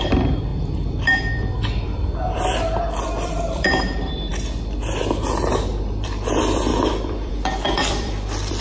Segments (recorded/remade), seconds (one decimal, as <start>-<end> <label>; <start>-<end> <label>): 0.0-4.3 remade; 4.3-5.4 recorded; 5.4-8.6 remade